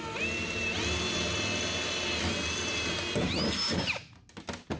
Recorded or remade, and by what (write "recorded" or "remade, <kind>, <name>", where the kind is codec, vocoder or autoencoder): recorded